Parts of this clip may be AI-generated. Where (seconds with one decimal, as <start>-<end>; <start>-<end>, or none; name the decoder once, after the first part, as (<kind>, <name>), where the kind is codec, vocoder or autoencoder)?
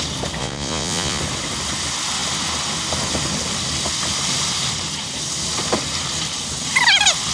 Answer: 0.4-1.2 (vocoder, Vocos)